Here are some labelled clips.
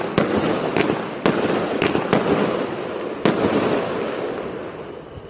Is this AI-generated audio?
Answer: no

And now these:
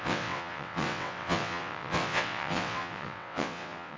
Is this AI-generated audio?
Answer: yes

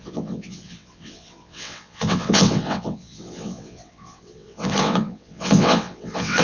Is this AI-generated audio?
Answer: yes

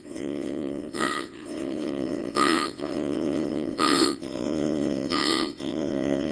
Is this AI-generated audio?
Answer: yes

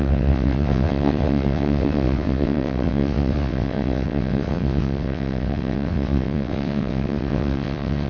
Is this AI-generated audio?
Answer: yes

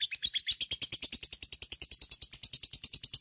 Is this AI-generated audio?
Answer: no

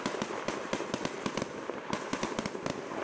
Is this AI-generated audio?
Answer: no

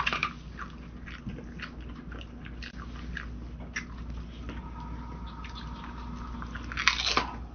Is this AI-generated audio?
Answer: no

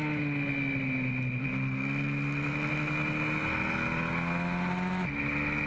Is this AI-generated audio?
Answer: no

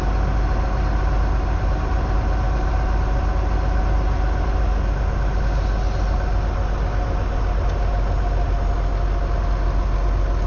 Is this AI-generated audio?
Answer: no